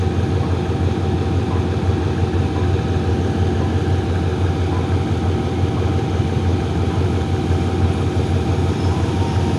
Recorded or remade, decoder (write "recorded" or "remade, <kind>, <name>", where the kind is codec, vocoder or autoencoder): recorded